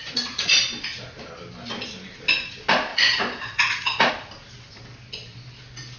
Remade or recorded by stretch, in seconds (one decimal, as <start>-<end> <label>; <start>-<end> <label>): 0.0-0.6 remade; 0.6-2.9 recorded; 2.9-4.1 remade; 4.1-6.0 recorded